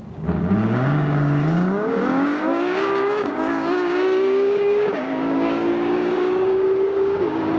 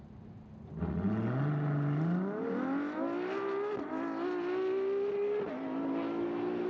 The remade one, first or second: first